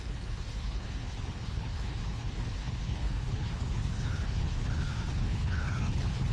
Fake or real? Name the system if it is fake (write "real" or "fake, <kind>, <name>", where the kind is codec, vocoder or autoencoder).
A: fake, codec, HILCodec